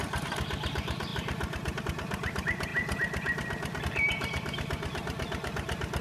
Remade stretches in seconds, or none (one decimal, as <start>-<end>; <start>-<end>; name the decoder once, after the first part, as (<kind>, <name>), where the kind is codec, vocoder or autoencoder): 0.7-2.7 (vocoder, BigVGAN v2); 3.8-6.0